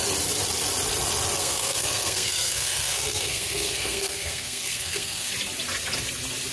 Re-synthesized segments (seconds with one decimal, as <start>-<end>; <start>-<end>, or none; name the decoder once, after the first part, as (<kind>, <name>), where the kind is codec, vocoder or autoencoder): 1.4-5.3 (codec, SNAC)